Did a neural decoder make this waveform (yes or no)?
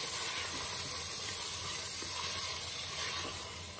no